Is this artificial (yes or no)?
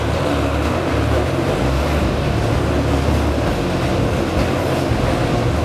no